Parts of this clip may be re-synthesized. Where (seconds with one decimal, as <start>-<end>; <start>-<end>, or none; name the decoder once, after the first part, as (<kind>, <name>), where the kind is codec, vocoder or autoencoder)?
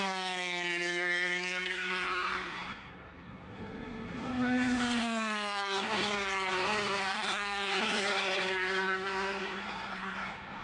0.0-10.6 (codec, SNAC)